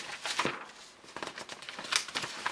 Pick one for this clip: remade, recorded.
recorded